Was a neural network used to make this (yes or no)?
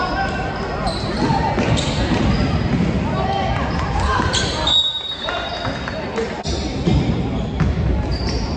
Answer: no